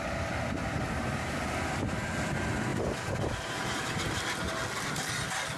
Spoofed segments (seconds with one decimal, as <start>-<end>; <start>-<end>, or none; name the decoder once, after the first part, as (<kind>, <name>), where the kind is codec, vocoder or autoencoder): none